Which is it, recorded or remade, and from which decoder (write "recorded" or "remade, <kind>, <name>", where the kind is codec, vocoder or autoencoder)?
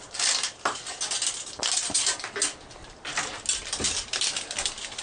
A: recorded